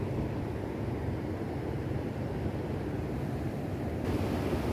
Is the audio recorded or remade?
recorded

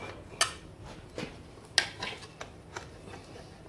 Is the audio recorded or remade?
recorded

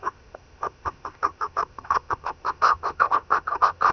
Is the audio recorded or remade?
remade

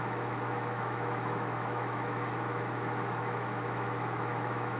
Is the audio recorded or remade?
remade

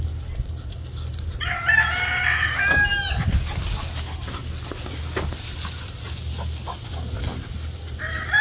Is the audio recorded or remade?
recorded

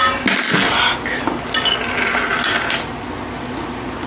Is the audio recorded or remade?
recorded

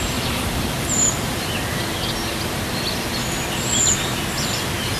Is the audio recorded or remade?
recorded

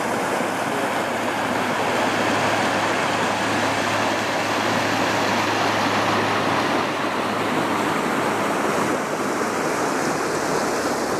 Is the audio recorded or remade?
recorded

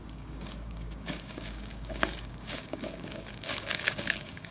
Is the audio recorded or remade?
remade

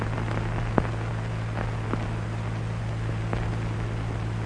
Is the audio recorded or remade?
recorded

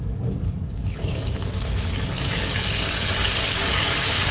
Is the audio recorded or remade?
remade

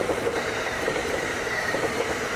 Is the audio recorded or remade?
remade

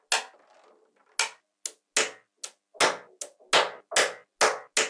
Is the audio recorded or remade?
recorded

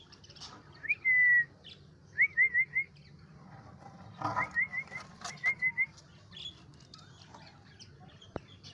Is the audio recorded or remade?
recorded